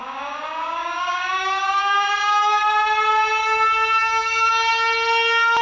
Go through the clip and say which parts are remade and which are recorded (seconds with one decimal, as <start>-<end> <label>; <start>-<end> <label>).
0.0-2.6 remade; 2.6-3.4 recorded; 3.4-4.5 remade; 4.5-5.6 recorded